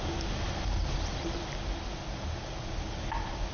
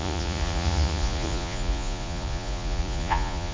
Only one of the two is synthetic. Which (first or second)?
second